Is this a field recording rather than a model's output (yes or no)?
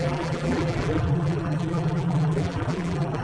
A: no